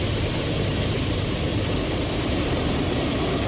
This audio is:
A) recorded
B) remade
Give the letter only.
B